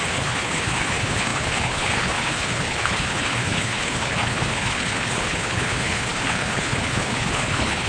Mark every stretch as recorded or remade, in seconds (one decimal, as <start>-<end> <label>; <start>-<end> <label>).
0.0-7.9 remade